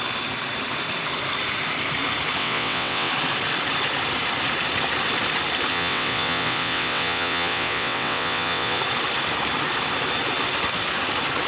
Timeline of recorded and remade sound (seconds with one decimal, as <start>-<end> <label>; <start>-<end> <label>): 0.0-2.4 recorded; 2.4-3.1 remade; 3.1-5.7 recorded; 5.7-8.8 remade; 8.8-11.5 recorded